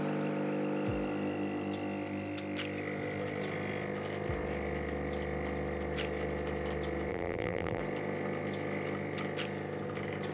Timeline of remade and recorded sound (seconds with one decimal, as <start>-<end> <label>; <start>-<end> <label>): 0.0-7.1 recorded; 7.1-7.8 remade; 7.8-10.3 recorded

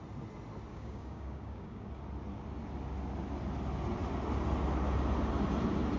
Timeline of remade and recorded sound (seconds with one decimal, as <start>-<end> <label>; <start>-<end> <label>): 0.0-0.7 recorded; 0.7-1.9 remade; 1.9-6.0 recorded